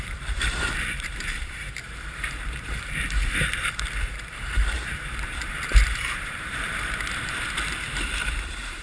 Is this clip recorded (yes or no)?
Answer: no